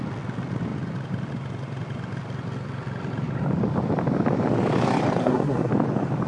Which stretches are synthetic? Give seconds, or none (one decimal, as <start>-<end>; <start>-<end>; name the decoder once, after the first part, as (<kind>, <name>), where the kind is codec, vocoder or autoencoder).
5.2-5.7 (codec, SNAC)